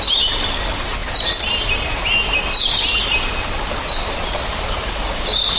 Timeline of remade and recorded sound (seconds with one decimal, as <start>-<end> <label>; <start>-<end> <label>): 0.0-5.6 recorded